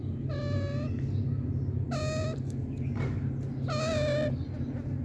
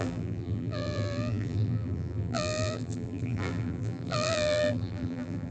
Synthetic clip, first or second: second